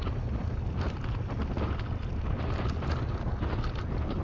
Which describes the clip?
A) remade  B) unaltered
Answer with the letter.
B